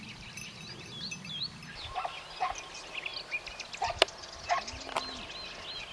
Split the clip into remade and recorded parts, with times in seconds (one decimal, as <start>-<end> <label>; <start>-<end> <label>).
0.0-5.9 recorded